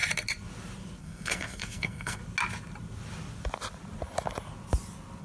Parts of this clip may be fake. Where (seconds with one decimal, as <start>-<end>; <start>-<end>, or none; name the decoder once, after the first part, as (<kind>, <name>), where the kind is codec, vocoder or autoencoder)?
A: 1.0-2.2 (codec, SNAC)